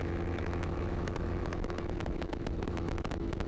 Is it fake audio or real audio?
fake